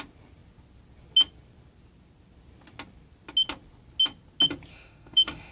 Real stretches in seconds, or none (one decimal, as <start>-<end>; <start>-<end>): 0.0-4.7